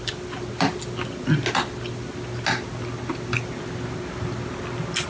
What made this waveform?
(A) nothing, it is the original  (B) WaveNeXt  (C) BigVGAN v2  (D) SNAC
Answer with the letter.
A